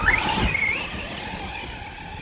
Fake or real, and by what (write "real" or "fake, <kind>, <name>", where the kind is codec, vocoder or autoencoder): fake, vocoder, BigVGAN v2